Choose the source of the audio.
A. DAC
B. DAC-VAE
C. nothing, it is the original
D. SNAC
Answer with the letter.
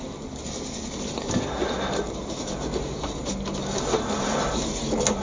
C